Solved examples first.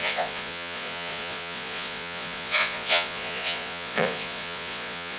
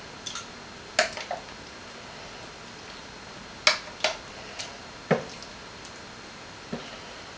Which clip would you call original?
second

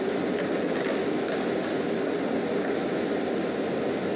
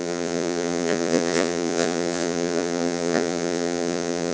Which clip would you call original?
first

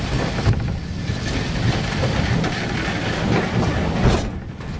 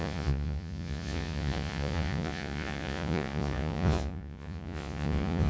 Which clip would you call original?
first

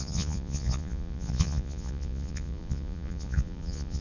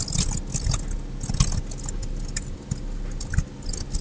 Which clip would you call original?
second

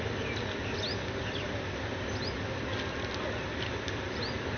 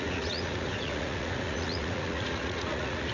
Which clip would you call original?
first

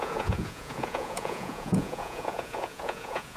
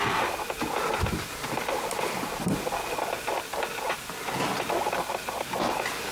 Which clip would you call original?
second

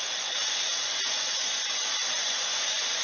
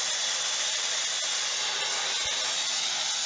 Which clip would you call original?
second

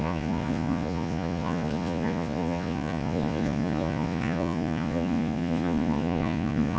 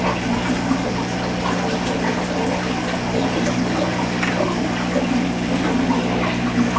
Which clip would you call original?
second